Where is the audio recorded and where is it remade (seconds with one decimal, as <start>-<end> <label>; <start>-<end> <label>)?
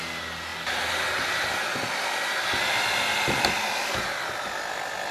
0.0-5.1 recorded